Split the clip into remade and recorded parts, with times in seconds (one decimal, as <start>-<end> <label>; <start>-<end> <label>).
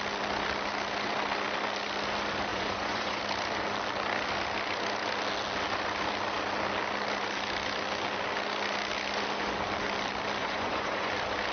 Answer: 0.0-2.5 recorded; 2.5-3.2 remade; 3.2-10.4 recorded; 10.4-11.1 remade; 11.1-11.5 recorded